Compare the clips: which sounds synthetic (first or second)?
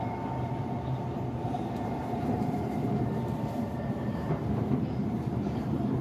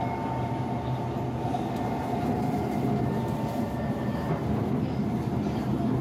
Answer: first